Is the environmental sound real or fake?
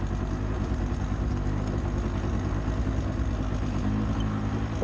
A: real